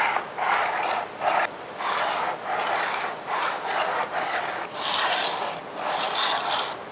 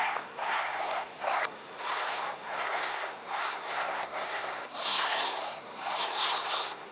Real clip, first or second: first